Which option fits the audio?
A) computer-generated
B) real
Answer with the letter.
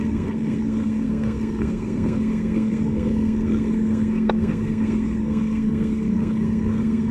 A